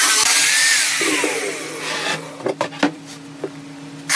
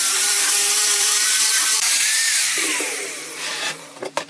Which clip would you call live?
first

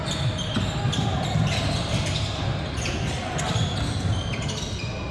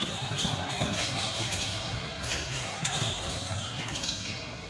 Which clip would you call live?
first